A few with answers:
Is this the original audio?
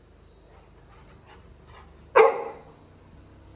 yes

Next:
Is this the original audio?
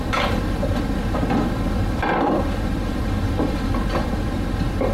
no